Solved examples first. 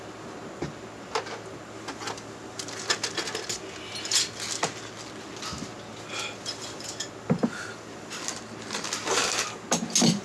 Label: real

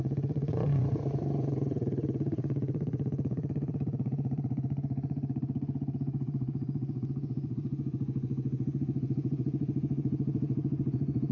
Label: fake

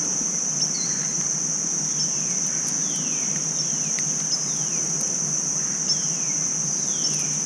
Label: real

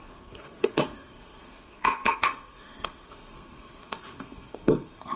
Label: fake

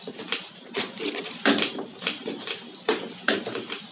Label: fake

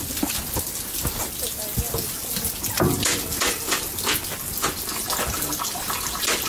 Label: real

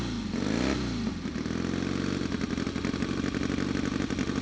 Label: real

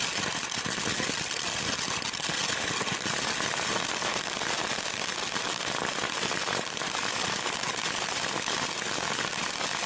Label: real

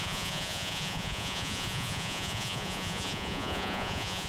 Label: fake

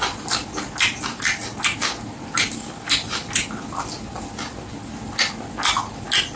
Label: real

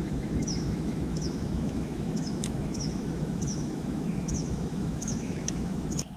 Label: fake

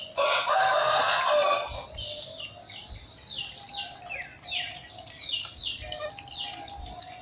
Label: real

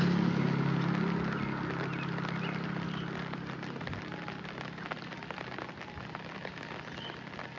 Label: real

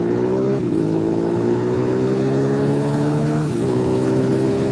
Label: fake